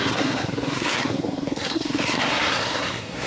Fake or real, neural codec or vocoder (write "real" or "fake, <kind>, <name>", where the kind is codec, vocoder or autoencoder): fake, codec, SNAC